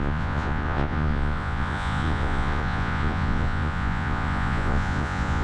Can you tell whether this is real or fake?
fake